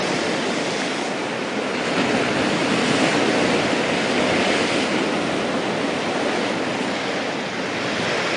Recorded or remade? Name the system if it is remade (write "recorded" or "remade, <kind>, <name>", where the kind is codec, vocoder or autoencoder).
recorded